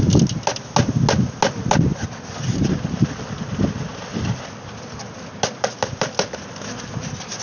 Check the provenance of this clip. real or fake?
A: real